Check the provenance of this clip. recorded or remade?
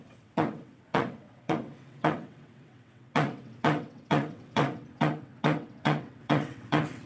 remade